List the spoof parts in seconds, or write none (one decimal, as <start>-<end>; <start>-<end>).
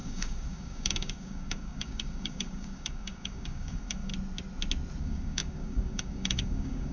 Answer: 0.0-4.1; 5.0-6.9